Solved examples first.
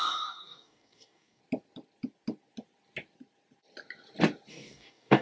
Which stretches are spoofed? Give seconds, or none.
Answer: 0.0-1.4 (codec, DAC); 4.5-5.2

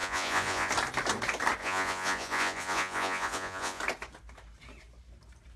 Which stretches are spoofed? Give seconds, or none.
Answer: 0.0-0.7 (vocoder, Vocos); 1.6-3.8

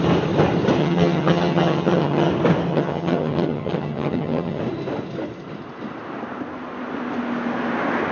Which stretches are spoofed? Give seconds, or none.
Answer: 0.8-2.3 (vocoder, HiFi-GAN); 2.7-4.6

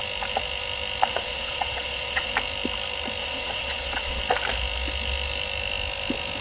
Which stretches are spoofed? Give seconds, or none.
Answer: 1.1-2.3 (vocoder, Vocos); 3.2-4.2

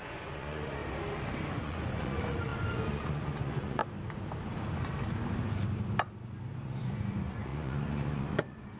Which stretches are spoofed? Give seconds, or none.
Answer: 0.0-0.8 (vocoder, Vocos); 1.5-3.8; 6.5-8.8

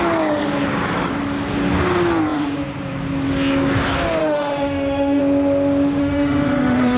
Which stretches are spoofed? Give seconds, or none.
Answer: 4.2-5.2 (autoencoder, DAC-VAE); 6.0-7.0

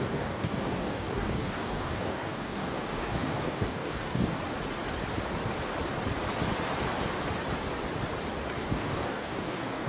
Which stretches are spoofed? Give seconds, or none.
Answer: 0.0-4.4 (codec, DAC); 8.7-9.9